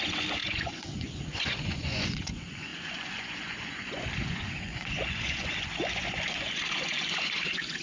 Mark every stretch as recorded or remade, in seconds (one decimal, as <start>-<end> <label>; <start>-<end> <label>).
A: 0.0-7.8 remade